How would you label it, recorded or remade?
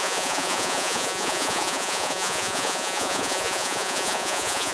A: remade